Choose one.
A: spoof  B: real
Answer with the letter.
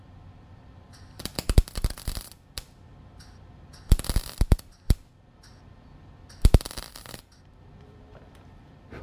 A